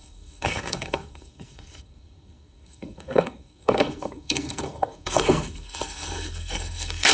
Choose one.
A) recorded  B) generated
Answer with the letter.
B